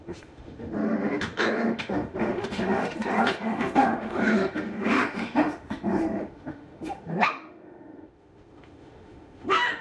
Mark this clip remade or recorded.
remade